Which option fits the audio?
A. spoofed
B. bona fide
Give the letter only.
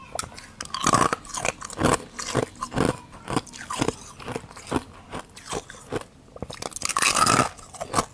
B